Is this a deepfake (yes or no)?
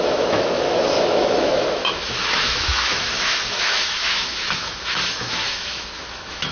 yes